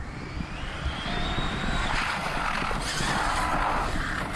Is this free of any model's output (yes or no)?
yes